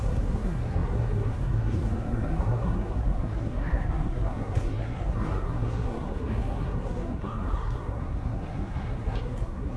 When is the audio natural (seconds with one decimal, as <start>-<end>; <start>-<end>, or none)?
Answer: none